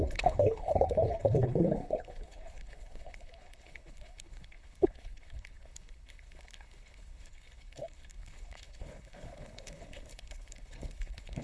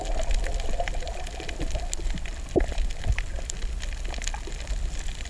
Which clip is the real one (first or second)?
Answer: second